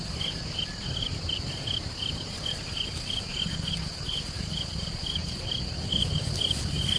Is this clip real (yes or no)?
yes